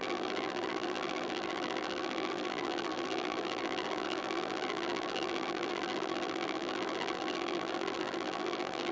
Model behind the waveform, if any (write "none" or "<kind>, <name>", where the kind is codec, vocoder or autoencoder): vocoder, BigVGAN v2